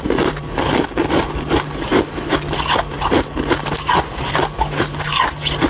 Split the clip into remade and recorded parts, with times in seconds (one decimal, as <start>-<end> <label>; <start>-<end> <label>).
0.0-5.7 recorded